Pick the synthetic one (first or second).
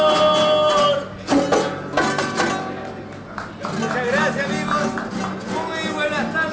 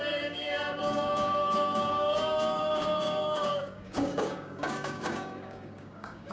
second